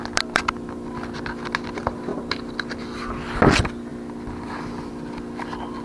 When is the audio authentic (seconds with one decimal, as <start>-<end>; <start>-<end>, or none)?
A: 0.0-5.8